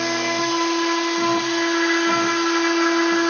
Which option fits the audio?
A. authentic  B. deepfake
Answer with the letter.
A